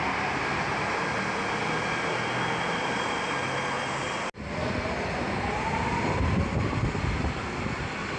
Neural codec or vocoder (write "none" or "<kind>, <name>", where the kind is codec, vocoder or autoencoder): none